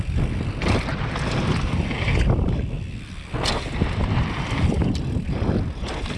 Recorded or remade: recorded